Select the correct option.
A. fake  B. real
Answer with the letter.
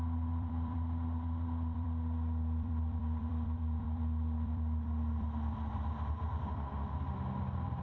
A